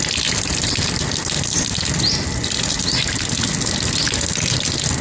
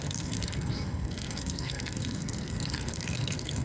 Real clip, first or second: first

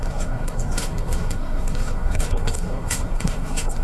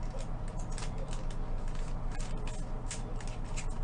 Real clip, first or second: second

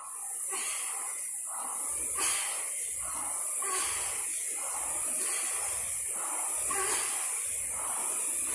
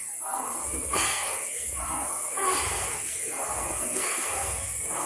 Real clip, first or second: first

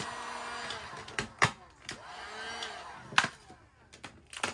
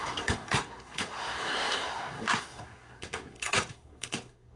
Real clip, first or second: first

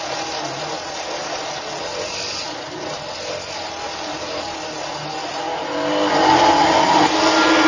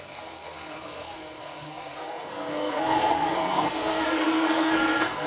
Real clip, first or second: first